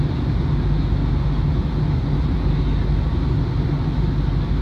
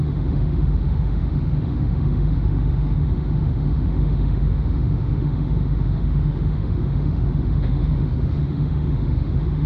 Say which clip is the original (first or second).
first